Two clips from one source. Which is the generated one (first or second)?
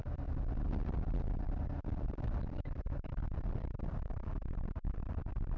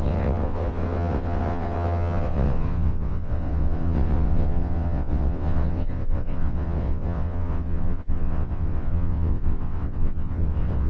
second